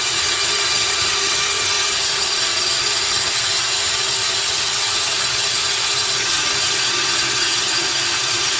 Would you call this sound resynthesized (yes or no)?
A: yes